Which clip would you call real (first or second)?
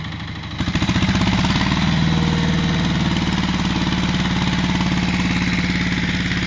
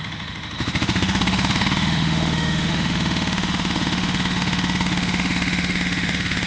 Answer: first